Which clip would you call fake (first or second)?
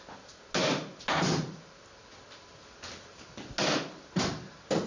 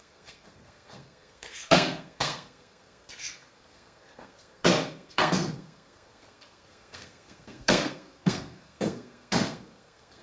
second